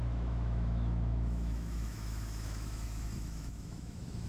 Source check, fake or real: fake